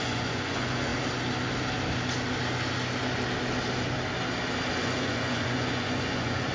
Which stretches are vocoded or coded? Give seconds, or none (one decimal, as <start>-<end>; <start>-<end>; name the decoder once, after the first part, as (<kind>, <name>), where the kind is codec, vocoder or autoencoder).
0.0-0.9 (vocoder, Vocos); 4.8-6.5